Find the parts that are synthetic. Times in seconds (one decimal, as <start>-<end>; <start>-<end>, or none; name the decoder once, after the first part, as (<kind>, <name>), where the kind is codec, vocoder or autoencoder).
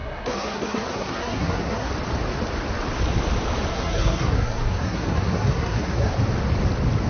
0.0-1.9 (codec, SNAC); 3.7-6.1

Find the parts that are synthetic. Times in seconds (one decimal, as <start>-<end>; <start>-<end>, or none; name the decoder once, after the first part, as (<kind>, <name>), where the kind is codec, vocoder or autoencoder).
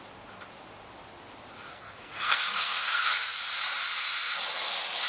1.7-3.4 (codec, SNAC)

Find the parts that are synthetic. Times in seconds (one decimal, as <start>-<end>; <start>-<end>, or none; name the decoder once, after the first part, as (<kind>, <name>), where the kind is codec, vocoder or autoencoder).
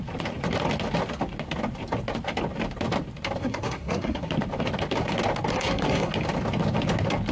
3.4-4.3 (codec, SNAC); 5.5-6.1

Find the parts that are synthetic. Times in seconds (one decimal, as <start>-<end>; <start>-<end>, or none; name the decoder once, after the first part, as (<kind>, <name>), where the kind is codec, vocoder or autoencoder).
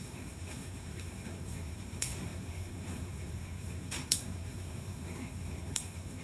0.0-6.2 (codec, SNAC)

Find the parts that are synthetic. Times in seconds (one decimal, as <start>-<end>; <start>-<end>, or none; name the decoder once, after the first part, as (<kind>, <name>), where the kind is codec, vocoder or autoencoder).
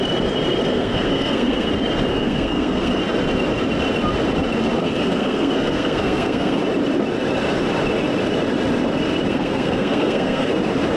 0.7-1.7 (codec, SNAC); 2.1-3.0; 4.8-6.6; 9.3-10.5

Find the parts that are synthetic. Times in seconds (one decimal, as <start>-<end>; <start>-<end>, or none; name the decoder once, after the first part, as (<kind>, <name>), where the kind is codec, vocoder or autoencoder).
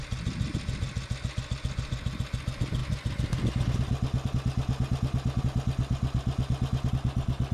none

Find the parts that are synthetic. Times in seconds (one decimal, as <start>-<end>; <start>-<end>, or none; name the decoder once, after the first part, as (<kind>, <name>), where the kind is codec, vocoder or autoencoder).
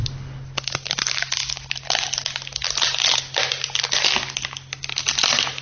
none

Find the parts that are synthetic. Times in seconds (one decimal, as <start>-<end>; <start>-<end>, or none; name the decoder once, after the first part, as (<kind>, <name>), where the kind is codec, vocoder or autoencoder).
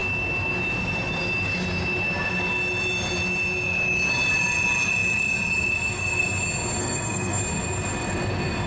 6.8-7.4 (codec, SNAC)